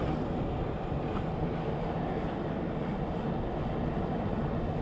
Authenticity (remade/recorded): recorded